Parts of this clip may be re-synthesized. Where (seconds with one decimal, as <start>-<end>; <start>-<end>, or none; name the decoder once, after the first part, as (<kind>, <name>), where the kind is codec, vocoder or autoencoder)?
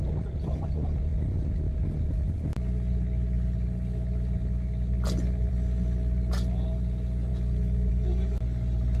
none